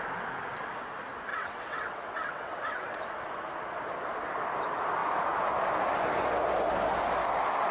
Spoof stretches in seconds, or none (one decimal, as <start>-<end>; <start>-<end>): 1.3-3.0